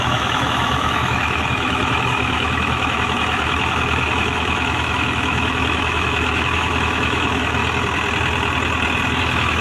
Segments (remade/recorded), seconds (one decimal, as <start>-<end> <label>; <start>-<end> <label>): 0.0-7.6 remade; 7.6-9.2 recorded; 9.2-9.6 remade